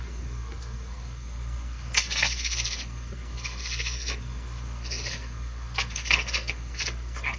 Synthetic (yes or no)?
yes